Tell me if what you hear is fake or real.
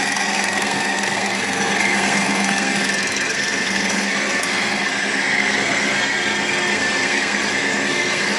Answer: fake